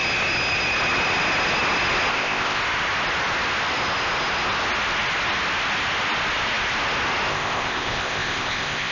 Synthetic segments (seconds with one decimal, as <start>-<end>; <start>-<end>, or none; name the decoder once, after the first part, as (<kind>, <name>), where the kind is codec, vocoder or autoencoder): 2.1-2.6 (codec, ZipCodec); 7.3-8.9